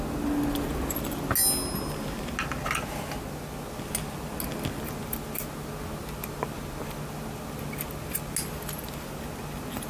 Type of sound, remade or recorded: recorded